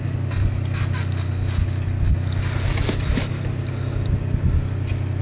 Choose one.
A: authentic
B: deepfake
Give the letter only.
A